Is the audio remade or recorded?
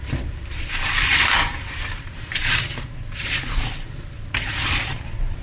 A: remade